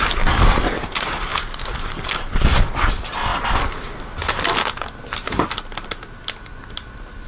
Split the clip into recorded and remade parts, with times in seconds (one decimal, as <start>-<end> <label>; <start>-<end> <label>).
0.0-7.3 recorded